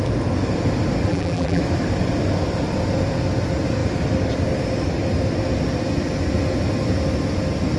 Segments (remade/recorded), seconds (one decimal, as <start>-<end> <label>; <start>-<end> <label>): 0.0-1.1 recorded; 1.1-1.6 remade; 1.6-7.8 recorded